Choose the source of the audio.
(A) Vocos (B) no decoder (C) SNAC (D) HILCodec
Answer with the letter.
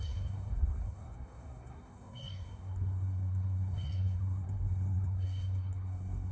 C